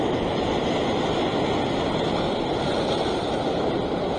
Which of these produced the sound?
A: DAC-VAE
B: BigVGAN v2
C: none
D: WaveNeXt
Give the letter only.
C